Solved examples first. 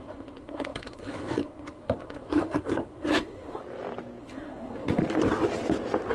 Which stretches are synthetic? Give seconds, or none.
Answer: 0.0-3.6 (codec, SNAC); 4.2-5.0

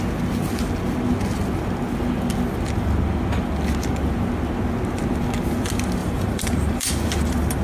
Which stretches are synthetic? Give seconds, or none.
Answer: 6.0-6.9 (vocoder, BigVGAN v2)

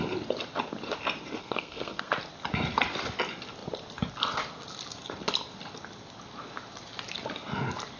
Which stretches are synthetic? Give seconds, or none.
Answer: 1.4-2.1 (codec, SNAC)

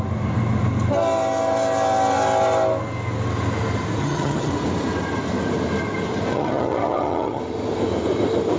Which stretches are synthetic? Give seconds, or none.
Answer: 4.0-4.5 (vocoder, HiFi-GAN); 6.3-7.4

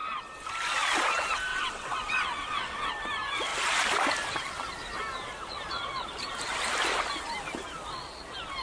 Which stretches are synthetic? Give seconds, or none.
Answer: 1.5-2.9 (vocoder, WaveNeXt)

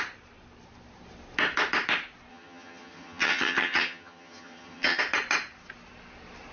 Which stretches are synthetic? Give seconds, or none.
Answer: 2.3-5.0 (vocoder, HiFi-GAN)

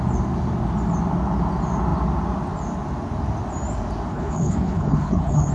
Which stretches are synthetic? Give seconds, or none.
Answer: 4.1-5.5 (codec, HILCodec)

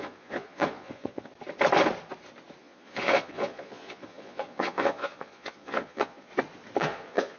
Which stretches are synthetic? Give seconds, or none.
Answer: 0.0-1.3 (vocoder, Vocos); 2.6-6.3; 6.8-7.4